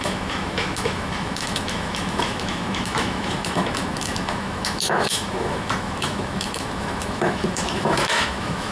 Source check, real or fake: fake